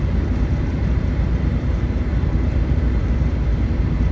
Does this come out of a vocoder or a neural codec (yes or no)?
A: yes